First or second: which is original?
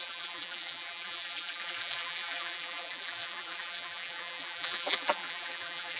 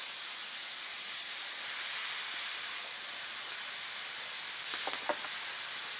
second